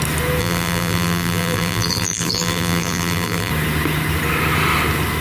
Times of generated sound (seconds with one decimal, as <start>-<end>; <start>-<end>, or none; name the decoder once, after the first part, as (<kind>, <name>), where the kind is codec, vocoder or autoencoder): 0.4-3.5 (vocoder, BigVGAN v2)

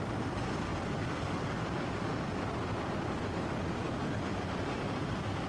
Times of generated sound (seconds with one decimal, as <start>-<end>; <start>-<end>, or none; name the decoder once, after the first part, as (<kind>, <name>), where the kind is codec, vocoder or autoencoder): none

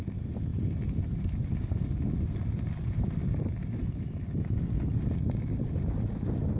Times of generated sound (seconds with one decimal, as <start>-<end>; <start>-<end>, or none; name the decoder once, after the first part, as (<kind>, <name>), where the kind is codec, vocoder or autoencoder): none

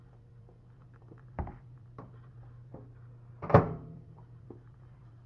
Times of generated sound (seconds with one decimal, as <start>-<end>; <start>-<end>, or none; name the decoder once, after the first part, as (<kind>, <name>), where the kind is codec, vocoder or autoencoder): 0.0-2.7 (vocoder, BigVGAN v2); 3.6-5.3